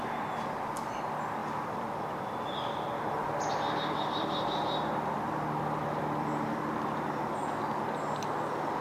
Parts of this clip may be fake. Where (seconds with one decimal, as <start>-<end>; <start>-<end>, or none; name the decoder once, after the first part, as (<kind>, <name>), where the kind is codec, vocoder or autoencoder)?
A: none